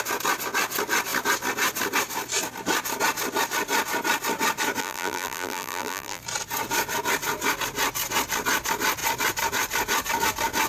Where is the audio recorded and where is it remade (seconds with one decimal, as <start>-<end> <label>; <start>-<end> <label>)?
0.0-4.8 recorded; 4.8-6.2 remade; 6.2-10.7 recorded